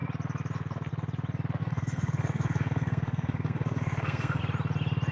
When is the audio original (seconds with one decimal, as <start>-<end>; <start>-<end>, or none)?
0.0-1.6; 4.4-5.1